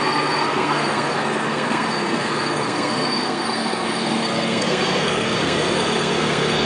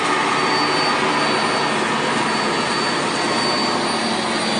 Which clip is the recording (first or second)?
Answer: second